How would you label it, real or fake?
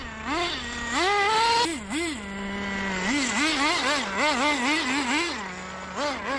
real